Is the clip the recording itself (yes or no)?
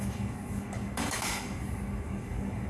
no